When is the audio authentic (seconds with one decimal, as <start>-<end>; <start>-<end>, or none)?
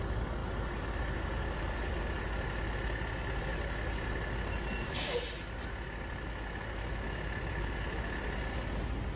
0.0-9.2